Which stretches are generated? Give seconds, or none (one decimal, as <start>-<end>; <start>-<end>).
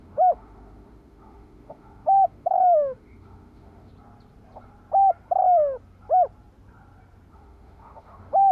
0.0-3.9; 7.3-8.5